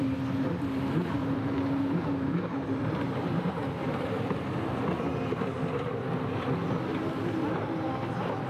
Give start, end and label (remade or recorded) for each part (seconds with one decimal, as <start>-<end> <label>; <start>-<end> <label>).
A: 0.0-1.2 recorded; 1.2-4.1 remade; 4.1-8.5 recorded

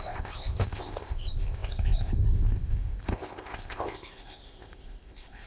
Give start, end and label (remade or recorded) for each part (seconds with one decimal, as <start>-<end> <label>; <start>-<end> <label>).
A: 0.0-5.5 remade

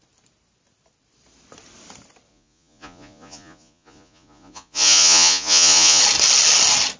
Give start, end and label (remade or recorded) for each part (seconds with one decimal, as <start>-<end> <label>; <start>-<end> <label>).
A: 0.0-2.3 recorded; 2.3-6.0 remade; 6.0-7.0 recorded

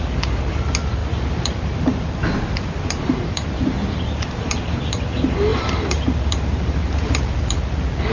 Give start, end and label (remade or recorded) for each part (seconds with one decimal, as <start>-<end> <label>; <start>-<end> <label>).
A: 0.0-1.0 recorded; 1.0-5.1 remade; 5.1-5.5 recorded; 5.5-7.2 remade; 7.2-8.1 recorded

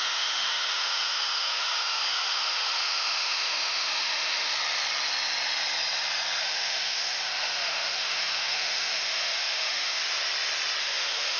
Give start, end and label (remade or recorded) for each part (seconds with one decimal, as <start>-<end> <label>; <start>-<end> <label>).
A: 0.0-4.5 remade; 4.5-6.4 recorded; 6.4-10.0 remade; 10.0-10.8 recorded; 10.8-11.4 remade

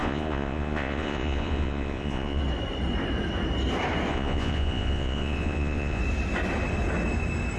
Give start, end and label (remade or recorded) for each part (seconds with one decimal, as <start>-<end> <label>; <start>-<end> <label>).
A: 0.0-2.4 remade; 2.4-4.1 recorded; 4.1-6.0 remade; 6.0-7.6 recorded